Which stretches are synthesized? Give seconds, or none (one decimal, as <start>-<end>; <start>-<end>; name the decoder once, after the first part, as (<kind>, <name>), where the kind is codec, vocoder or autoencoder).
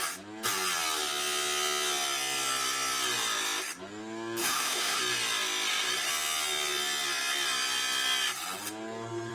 4.4-5.0 (autoencoder, DAC-VAE)